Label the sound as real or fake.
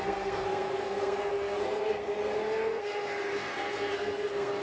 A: fake